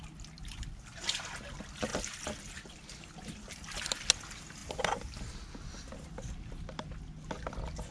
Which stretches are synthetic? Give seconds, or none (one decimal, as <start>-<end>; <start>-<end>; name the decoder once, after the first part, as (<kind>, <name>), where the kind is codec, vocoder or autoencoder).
none